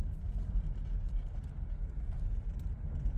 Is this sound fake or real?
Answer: real